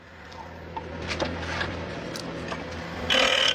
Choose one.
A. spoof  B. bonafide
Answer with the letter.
B